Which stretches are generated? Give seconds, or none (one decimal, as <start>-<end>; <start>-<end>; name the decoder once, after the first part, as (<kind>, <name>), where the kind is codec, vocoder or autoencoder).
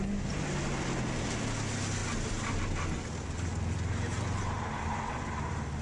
none